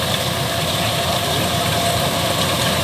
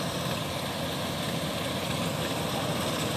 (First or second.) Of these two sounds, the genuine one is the second